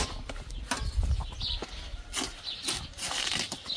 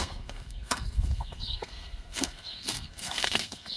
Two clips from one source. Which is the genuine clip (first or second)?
first